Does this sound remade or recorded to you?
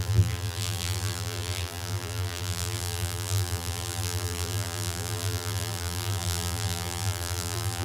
remade